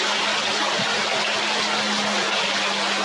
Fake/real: real